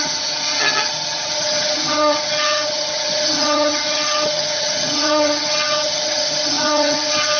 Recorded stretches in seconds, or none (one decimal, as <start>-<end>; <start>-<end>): none